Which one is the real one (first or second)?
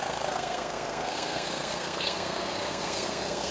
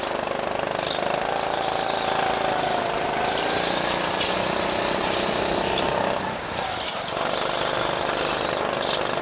second